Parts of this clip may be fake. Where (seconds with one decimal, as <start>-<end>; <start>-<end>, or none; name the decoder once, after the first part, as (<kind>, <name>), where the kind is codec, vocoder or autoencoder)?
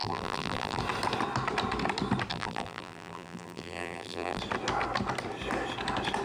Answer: 0.0-0.8 (vocoder, BigVGAN v2); 2.3-4.4